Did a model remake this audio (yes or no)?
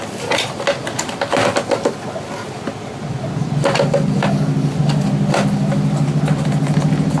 no